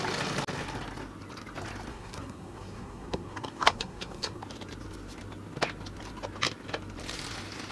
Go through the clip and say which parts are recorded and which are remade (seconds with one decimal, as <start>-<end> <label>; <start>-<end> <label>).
0.0-1.9 recorded; 1.9-4.4 remade; 4.4-7.7 recorded